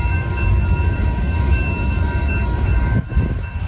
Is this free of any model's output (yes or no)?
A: no